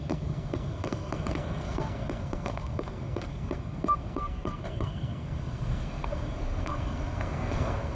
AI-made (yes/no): yes